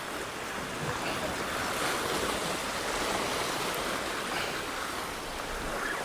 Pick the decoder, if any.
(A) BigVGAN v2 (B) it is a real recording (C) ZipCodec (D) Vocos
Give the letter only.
B